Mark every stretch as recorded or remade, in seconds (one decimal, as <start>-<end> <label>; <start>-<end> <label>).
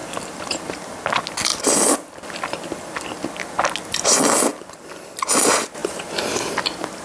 0.0-0.9 remade; 0.9-5.8 recorded; 5.8-6.5 remade; 6.5-7.0 recorded